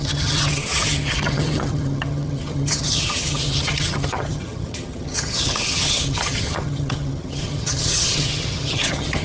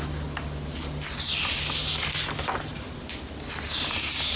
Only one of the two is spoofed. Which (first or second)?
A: first